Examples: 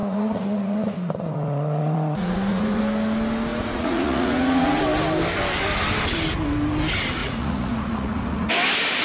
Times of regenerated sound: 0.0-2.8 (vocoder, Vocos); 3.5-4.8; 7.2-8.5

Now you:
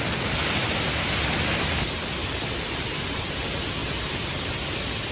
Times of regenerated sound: none

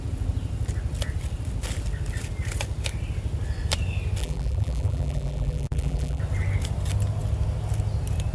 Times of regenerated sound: 4.2-6.2 (vocoder, BigVGAN v2)

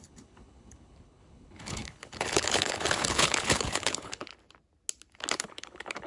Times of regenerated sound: 0.0-4.3 (codec, HILCodec); 5.3-6.1